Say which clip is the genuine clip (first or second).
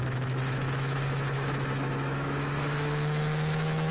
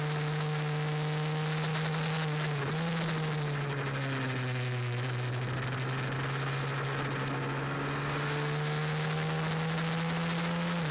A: second